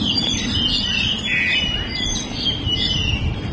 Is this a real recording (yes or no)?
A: yes